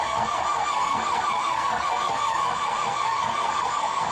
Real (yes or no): no